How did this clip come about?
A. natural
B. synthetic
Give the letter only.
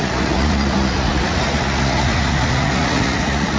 B